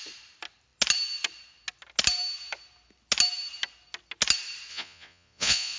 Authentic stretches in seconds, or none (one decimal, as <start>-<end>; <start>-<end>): 0.0-4.7